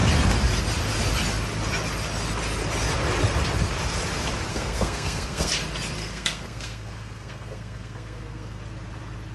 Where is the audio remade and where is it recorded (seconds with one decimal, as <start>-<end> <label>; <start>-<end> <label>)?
0.0-4.5 recorded; 4.5-5.5 remade; 5.5-6.0 recorded; 6.0-8.6 remade; 8.6-9.3 recorded